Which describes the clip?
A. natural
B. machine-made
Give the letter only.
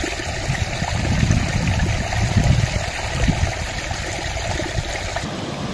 A